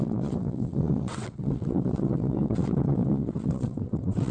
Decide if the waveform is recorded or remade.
remade